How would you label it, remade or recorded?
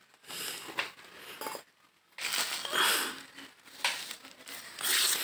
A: recorded